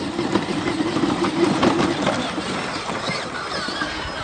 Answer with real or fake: real